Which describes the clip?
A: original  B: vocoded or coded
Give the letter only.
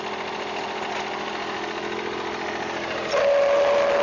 A